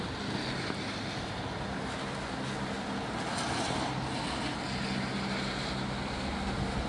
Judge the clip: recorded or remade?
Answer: recorded